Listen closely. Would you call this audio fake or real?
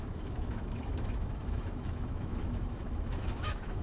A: fake